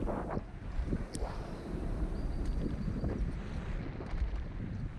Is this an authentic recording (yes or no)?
yes